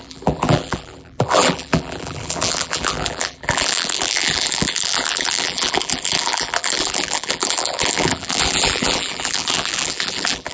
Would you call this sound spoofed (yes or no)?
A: yes